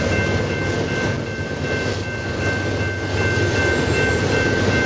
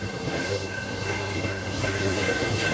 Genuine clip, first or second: first